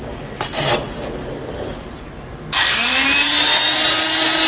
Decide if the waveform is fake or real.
real